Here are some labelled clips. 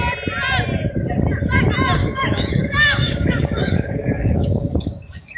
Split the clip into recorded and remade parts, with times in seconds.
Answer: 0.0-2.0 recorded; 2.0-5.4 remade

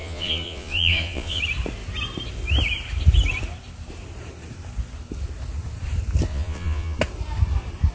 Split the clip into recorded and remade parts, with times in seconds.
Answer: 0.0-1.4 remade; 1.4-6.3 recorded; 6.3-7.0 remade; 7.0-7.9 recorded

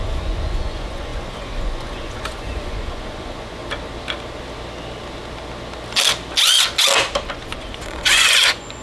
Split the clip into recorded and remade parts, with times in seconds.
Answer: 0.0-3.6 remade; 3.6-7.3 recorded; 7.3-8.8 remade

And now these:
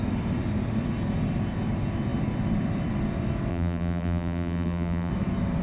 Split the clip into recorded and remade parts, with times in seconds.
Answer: 0.0-3.5 recorded; 3.5-5.1 remade; 5.1-5.6 recorded